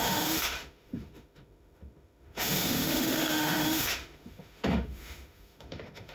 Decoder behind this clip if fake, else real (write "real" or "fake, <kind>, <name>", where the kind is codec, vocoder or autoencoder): fake, autoencoder, DAC-VAE